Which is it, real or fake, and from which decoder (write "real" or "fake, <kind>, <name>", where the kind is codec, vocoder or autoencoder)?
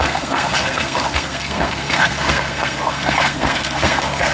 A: fake, codec, SNAC